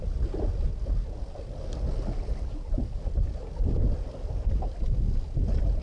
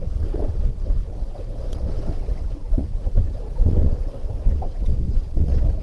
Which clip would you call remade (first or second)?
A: second